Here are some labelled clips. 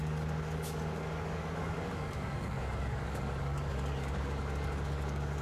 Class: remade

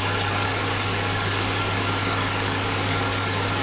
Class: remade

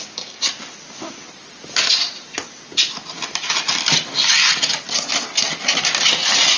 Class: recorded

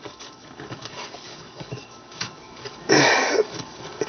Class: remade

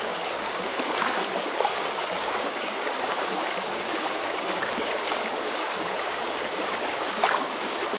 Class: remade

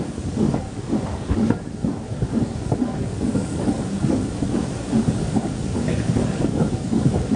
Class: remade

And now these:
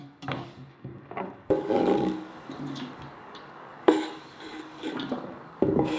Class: remade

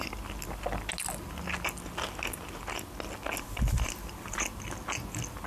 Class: recorded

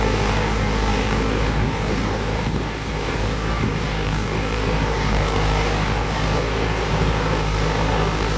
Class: remade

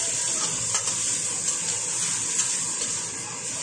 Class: recorded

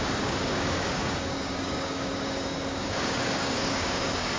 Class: remade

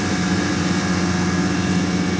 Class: recorded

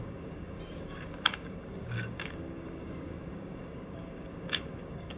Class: remade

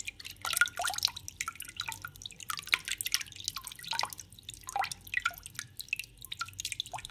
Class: recorded